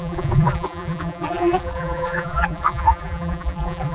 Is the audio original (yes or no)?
no